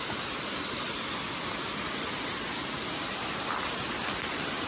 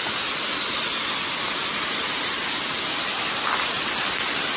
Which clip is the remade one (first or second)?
first